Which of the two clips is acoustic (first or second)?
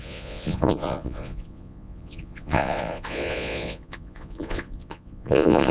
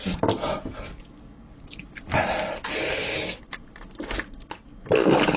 second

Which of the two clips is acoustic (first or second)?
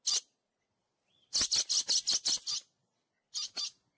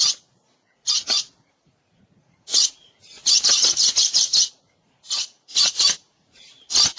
first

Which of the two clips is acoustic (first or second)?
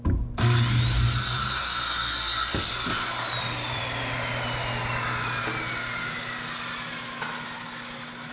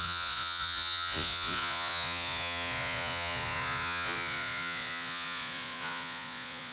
first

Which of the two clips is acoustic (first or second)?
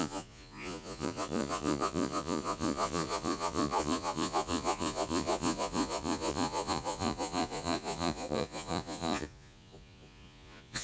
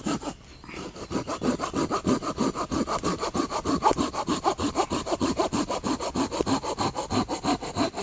second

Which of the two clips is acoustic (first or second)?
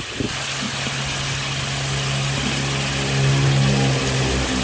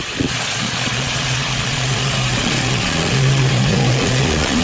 first